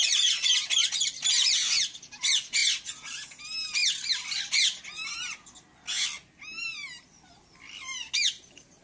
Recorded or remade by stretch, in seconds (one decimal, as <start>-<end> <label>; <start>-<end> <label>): 0.0-8.8 recorded